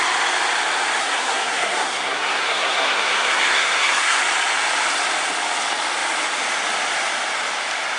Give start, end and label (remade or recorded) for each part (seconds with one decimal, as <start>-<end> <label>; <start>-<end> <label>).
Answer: 0.0-1.0 recorded; 1.0-4.2 remade; 4.2-8.0 recorded